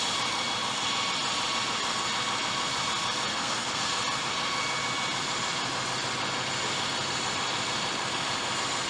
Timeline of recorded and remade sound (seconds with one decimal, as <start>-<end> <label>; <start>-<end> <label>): 0.0-3.3 recorded; 3.3-3.8 remade; 3.8-8.9 recorded